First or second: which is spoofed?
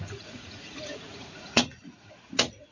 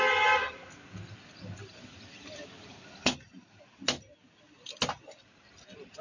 first